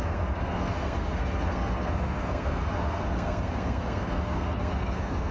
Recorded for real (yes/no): no